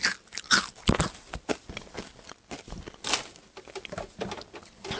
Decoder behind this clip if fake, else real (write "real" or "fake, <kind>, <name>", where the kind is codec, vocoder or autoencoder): real